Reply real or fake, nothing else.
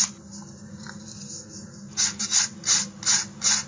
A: real